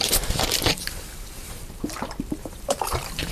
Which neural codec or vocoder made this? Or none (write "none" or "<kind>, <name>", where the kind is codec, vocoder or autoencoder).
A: vocoder, BigVGAN v2